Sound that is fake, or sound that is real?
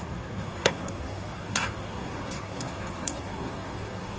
fake